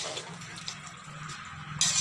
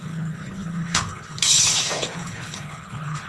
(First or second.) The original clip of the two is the first